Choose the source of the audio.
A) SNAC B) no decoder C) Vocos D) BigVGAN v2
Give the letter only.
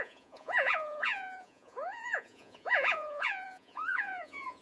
C